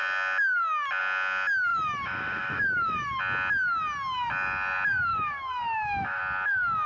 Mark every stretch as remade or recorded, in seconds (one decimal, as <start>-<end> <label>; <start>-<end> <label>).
0.0-1.7 recorded; 1.7-3.2 remade; 3.2-5.1 recorded; 5.1-6.2 remade; 6.2-6.9 recorded